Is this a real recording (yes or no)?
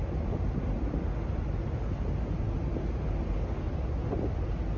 yes